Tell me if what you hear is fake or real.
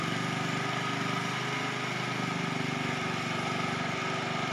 real